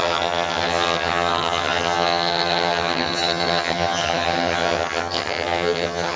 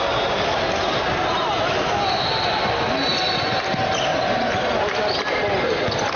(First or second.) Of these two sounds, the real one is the second